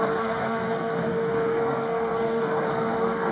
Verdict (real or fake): fake